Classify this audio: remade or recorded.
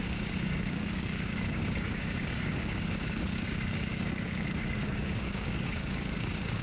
remade